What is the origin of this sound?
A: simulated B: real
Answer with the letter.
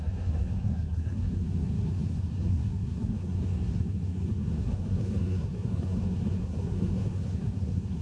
A